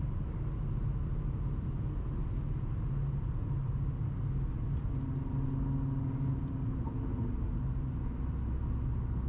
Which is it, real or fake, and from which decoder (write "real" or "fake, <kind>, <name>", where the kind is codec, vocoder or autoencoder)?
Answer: real